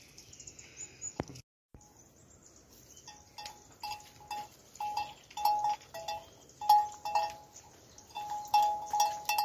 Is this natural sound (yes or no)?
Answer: yes